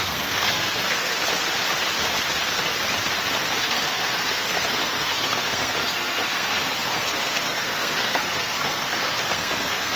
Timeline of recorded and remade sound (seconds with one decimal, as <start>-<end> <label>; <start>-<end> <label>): 0.0-1.3 remade; 1.3-3.6 recorded; 3.6-10.0 remade